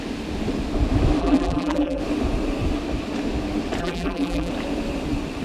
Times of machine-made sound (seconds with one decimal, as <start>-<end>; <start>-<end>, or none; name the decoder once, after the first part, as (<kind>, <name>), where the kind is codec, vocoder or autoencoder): 1.2-2.0 (vocoder, BigVGAN v2); 3.8-4.5